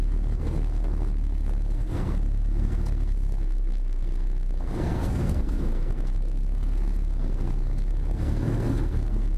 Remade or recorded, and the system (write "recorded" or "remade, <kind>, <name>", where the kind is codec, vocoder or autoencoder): remade, codec, SNAC